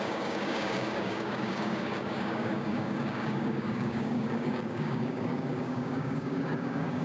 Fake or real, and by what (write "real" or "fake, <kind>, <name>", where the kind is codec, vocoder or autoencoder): fake, codec, DAC